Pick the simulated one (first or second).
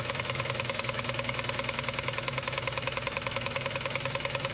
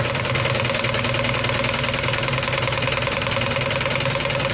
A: first